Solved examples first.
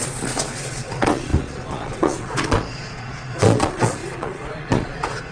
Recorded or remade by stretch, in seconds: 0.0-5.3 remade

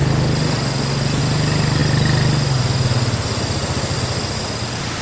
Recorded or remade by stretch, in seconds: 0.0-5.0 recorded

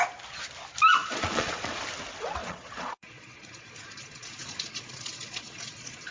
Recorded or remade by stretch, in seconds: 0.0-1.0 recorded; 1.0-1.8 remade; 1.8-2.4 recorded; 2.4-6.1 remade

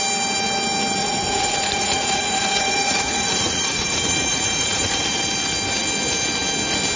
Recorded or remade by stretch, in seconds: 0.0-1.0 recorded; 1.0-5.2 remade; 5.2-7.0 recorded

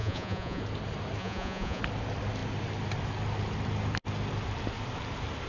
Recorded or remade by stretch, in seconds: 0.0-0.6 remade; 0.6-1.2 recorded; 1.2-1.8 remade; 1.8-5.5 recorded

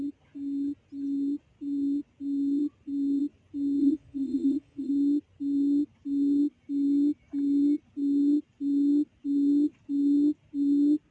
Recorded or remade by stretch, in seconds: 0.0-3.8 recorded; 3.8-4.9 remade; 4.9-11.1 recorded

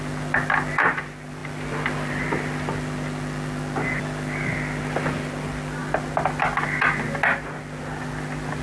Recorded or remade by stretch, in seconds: 0.0-8.6 recorded

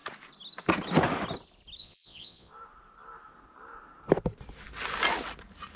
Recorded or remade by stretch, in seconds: 0.0-1.8 recorded; 1.8-2.5 remade; 2.5-5.8 recorded